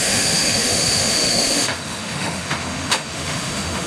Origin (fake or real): fake